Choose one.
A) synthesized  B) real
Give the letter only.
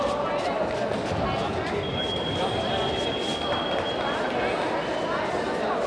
B